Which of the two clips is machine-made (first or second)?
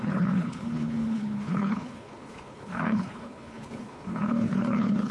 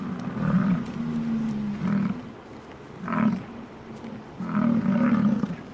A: first